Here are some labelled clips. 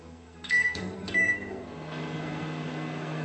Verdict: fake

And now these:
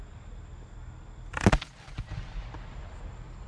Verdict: real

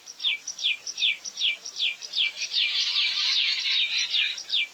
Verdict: fake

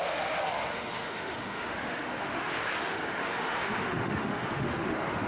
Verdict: fake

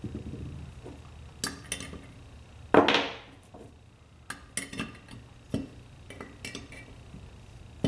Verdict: real